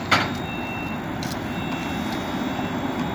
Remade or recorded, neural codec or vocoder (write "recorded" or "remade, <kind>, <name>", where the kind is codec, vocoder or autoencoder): recorded